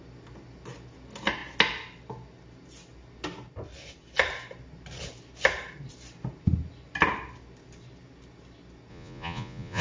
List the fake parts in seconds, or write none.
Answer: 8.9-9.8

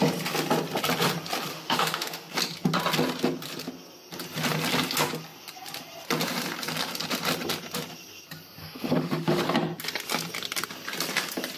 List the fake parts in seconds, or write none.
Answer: 1.5-2.3; 8.6-9.4

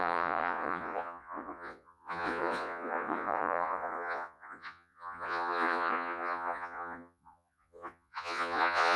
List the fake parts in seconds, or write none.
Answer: 0.0-9.0

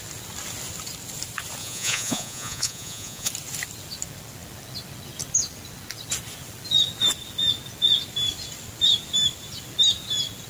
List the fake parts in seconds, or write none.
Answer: 1.6-3.3

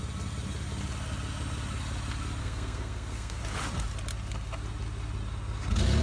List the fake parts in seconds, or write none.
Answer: 2.4-3.4

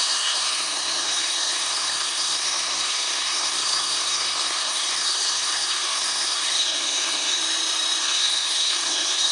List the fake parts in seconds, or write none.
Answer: 0.0-7.4; 8.0-9.3

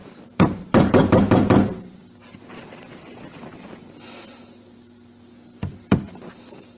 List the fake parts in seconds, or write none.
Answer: 0.0-3.1